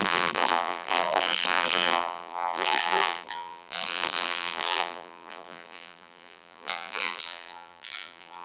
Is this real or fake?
fake